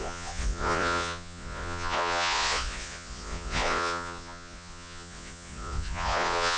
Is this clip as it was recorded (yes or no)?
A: no